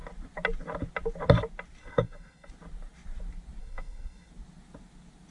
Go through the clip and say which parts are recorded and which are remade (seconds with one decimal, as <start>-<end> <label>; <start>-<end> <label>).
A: 0.0-1.8 recorded; 1.8-2.5 remade; 2.5-3.6 recorded; 3.6-4.3 remade; 4.3-5.3 recorded